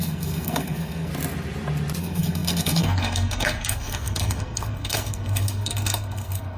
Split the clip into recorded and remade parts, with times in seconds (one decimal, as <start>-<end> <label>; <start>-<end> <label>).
0.0-1.1 remade; 1.1-2.0 recorded; 2.0-6.6 remade